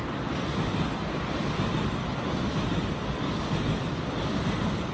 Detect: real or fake real